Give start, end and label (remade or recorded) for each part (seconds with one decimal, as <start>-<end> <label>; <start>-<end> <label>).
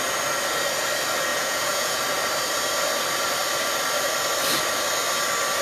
0.0-1.3 recorded; 1.3-2.0 remade; 2.0-5.6 recorded